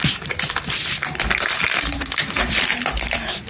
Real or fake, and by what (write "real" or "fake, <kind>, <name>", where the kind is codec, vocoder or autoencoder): fake, vocoder, BigVGAN v2